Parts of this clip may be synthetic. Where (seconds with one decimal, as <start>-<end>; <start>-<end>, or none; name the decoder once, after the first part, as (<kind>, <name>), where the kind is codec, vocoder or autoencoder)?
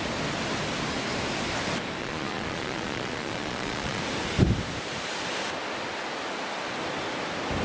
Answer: 2.0-4.0 (vocoder, Vocos)